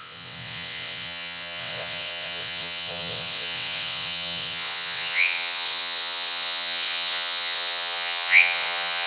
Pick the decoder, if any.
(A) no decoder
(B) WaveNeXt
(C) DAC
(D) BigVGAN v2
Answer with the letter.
B